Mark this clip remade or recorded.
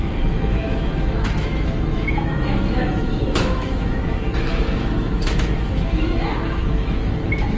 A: remade